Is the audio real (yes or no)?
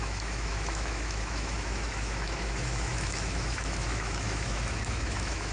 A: no